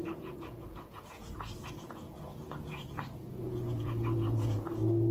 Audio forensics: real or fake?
fake